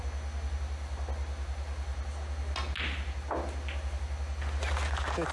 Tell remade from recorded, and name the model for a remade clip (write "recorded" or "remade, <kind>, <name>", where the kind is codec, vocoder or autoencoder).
recorded